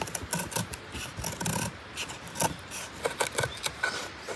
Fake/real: real